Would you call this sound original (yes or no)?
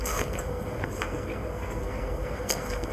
no